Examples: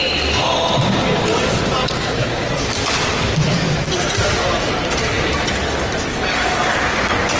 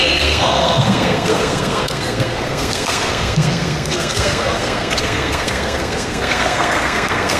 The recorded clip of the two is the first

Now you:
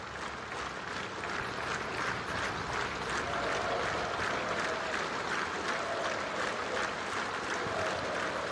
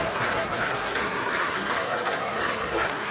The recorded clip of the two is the first